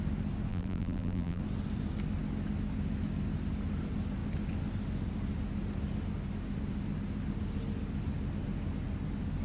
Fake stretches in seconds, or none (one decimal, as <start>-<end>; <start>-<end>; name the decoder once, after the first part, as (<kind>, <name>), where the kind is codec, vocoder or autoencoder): 0.5-1.4 (vocoder, BigVGAN v2)